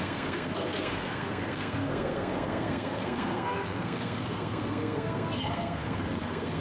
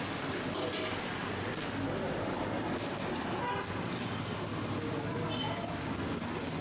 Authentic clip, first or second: second